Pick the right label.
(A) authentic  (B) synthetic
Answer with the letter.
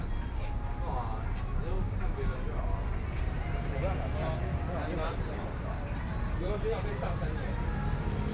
A